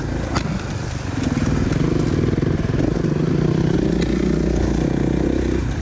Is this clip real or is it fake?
real